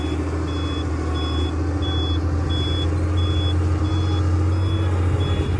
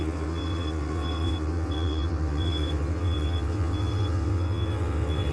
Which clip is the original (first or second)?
first